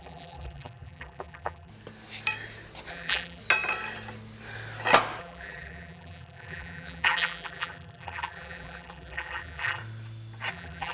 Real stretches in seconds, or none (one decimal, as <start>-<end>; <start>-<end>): 1.7-2.9; 3.4-5.2; 9.8-10.5